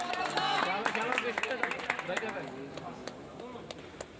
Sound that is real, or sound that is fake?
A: real